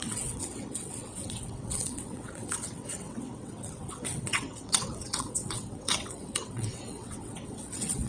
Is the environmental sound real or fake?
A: fake